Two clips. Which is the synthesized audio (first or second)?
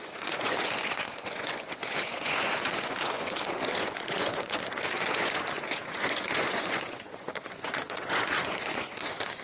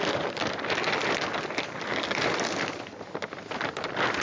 first